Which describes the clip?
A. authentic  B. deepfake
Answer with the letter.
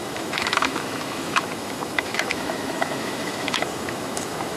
B